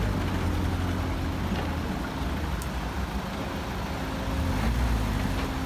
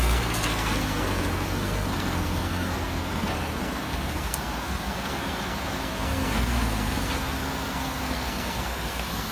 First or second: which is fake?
second